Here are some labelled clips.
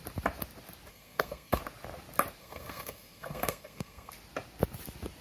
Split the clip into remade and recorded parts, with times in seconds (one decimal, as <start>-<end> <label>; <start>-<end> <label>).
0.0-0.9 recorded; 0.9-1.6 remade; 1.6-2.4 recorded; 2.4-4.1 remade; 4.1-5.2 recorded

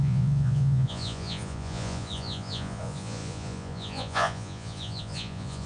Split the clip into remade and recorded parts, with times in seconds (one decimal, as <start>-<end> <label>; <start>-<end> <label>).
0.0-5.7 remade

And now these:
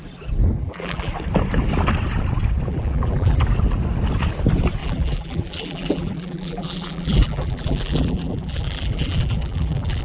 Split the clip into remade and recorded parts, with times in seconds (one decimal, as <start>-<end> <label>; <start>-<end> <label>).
0.0-0.6 recorded; 0.6-1.1 remade; 1.1-2.7 recorded; 2.7-3.4 remade; 3.4-4.8 recorded; 4.8-10.0 remade

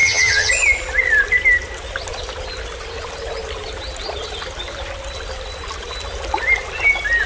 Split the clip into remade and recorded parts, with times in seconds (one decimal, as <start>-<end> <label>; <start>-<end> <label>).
0.0-0.5 remade; 0.5-7.3 recorded